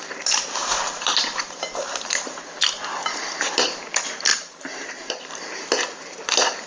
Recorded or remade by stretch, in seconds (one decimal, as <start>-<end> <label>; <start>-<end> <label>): 0.0-0.6 recorded; 0.6-3.9 remade; 3.9-4.3 recorded; 4.3-5.3 remade; 5.3-6.7 recorded